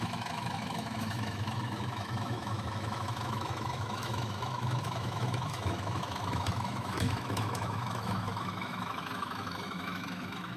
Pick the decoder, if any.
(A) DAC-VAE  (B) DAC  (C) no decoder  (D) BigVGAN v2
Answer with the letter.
A